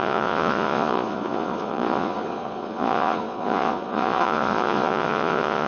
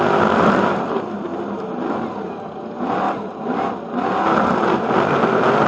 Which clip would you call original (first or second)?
second